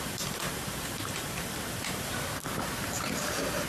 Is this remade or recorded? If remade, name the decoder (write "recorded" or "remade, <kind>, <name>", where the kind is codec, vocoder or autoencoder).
remade, vocoder, BigVGAN v2